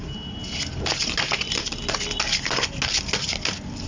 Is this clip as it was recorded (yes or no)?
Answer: yes